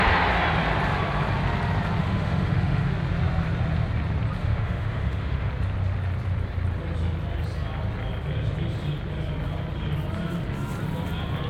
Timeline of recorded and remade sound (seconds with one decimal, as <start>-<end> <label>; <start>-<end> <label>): 0.0-2.0 recorded; 2.0-2.9 remade; 2.9-4.4 recorded; 4.4-5.5 remade; 5.5-11.5 recorded